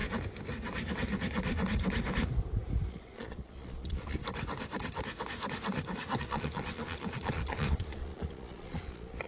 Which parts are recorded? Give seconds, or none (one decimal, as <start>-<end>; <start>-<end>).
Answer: 0.0-2.9; 4.2-6.2

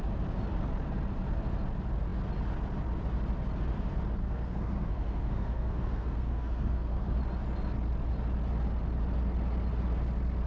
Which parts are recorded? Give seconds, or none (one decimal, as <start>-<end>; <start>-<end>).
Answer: 0.0-4.2; 7.2-10.5

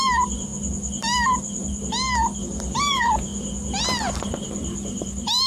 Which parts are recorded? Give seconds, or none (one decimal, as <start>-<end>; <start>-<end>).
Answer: 0.5-2.4; 3.3-4.1

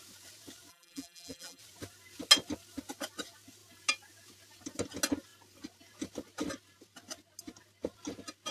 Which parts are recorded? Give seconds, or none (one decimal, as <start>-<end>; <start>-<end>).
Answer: 0.0-0.7; 1.6-8.5

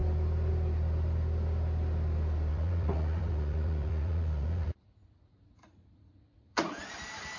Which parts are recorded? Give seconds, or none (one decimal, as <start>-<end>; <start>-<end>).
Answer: 0.0-2.5; 6.9-7.4